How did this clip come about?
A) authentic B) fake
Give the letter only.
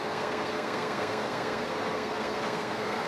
B